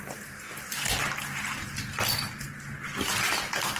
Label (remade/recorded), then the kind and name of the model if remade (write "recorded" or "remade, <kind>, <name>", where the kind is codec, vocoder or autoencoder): recorded